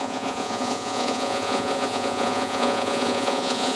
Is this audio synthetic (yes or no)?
yes